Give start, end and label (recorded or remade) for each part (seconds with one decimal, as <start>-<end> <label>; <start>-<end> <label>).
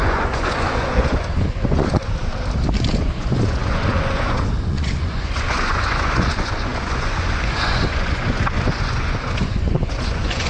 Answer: 0.0-2.3 remade; 2.3-2.9 recorded; 2.9-10.5 remade